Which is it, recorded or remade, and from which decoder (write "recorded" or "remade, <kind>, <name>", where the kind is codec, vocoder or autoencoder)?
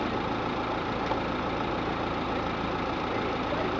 recorded